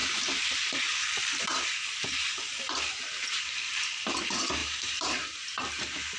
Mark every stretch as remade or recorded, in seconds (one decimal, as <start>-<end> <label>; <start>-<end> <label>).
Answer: 0.0-0.8 remade; 0.8-2.2 recorded; 2.2-3.0 remade; 3.0-4.6 recorded; 4.6-5.8 remade; 5.8-6.2 recorded